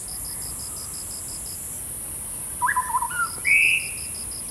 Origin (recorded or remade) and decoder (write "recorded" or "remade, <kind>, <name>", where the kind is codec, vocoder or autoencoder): recorded